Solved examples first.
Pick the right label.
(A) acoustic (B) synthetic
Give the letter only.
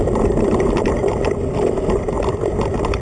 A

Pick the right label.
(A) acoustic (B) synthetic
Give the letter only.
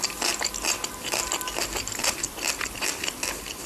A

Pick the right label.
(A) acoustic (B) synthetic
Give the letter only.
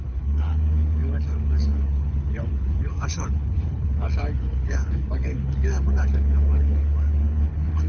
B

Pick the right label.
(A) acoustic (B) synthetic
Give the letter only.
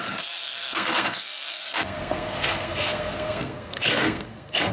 B